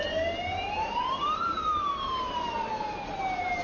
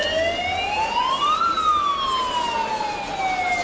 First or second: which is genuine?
second